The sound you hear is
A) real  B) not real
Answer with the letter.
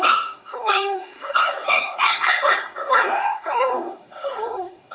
B